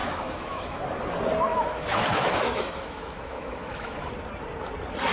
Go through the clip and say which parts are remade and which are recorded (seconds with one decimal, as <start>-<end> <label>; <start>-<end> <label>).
0.0-0.8 remade; 0.8-1.5 recorded; 1.5-4.1 remade; 4.1-5.1 recorded